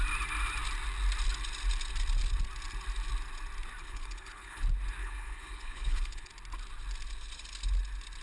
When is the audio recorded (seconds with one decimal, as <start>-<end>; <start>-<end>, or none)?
0.0-3.8; 4.6-5.0; 6.3-8.2